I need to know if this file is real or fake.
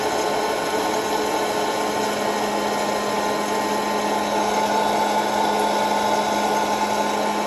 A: real